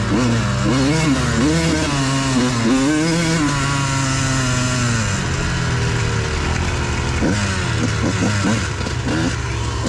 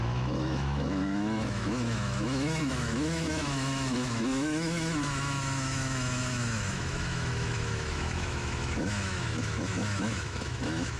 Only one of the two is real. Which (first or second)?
first